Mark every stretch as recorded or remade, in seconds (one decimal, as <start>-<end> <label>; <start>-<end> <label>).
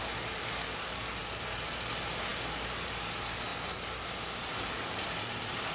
0.0-5.7 recorded